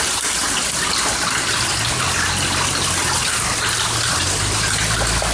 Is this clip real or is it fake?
real